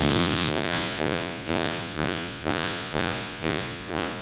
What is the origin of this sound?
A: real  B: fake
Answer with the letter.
B